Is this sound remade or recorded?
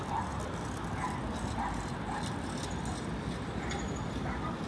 recorded